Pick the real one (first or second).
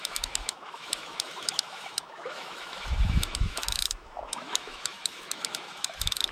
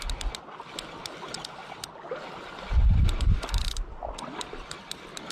second